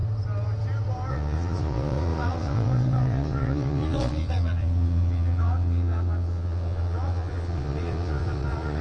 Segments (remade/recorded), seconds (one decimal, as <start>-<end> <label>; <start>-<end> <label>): 0.0-1.1 recorded; 1.1-8.8 remade